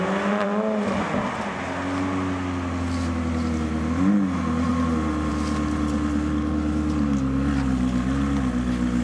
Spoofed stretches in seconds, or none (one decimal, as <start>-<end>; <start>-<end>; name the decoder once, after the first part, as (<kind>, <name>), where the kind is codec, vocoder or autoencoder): none